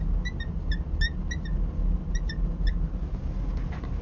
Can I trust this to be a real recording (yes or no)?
yes